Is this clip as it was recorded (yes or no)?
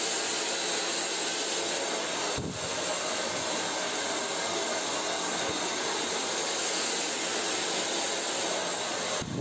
yes